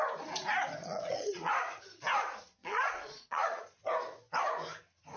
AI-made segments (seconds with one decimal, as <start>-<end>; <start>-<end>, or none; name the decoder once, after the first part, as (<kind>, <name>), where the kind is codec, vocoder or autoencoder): 0.8-1.5 (vocoder, Vocos); 2.6-3.6